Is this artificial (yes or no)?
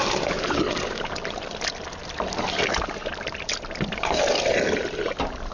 no